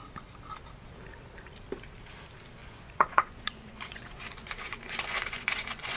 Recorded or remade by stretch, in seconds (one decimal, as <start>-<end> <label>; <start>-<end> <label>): 0.0-2.6 recorded; 2.6-6.0 remade